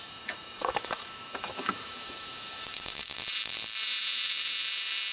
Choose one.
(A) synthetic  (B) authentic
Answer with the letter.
A